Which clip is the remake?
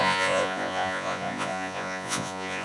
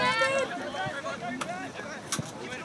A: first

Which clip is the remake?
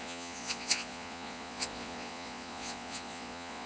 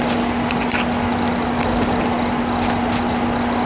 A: first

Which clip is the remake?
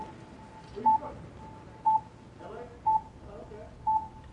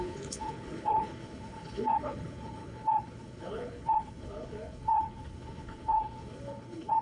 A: second